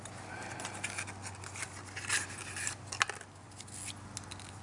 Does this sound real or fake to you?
real